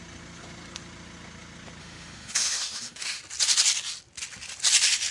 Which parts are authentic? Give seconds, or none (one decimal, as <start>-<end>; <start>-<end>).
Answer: 0.0-1.8; 3.2-5.1